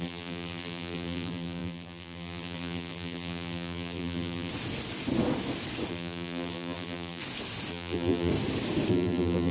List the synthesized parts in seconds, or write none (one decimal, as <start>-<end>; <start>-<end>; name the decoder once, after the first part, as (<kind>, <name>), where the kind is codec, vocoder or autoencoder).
0.0-4.5 (vocoder, BigVGAN v2); 5.9-7.2; 7.7-8.3; 8.9-9.5